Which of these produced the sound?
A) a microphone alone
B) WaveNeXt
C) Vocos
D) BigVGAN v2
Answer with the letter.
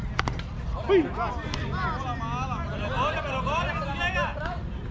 A